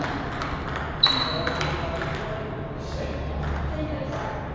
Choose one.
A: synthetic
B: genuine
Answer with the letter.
B